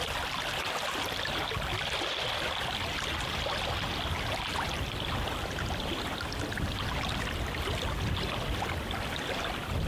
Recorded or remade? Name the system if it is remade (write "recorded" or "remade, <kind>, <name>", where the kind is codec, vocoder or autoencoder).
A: recorded